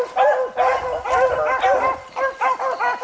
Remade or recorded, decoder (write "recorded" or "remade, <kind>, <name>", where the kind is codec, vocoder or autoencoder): recorded